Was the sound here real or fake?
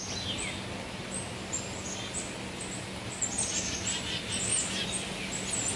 real